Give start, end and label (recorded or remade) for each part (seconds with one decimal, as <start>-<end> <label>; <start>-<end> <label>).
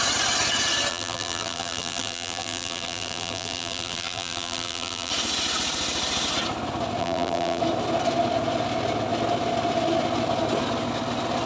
0.0-0.9 recorded; 0.9-5.1 remade; 5.1-7.0 recorded; 7.0-7.6 remade; 7.6-11.5 recorded